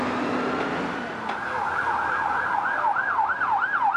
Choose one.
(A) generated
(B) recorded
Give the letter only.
B